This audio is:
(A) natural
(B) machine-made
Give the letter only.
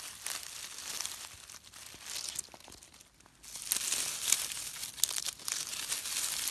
A